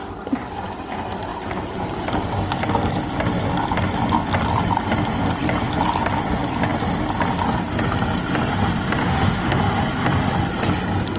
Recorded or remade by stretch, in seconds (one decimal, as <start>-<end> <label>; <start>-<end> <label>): 0.0-9.0 recorded; 9.0-9.6 remade; 9.6-11.2 recorded